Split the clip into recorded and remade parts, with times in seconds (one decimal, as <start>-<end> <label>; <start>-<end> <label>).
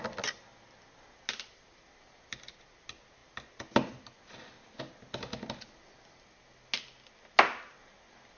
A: 0.0-8.4 recorded